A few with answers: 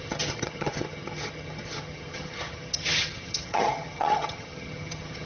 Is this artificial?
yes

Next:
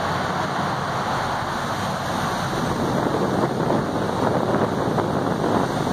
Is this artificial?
no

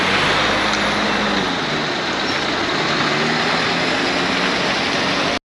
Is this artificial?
no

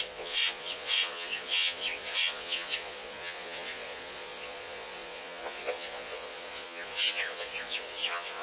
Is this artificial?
yes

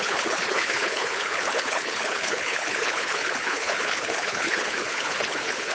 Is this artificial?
yes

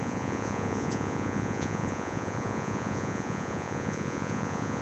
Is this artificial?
yes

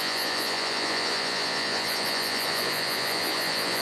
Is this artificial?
yes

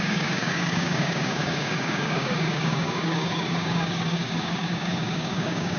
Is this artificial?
yes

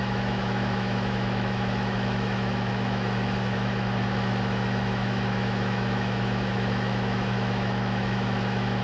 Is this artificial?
yes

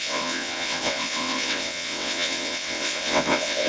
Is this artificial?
yes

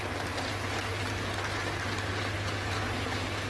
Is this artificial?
no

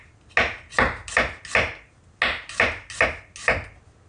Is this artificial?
no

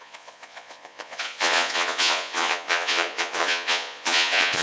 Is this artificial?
yes